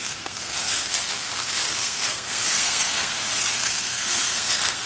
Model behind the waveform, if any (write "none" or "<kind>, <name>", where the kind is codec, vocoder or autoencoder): codec, SNAC